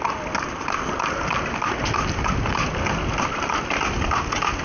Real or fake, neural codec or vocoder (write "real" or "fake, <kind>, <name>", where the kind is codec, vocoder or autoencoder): real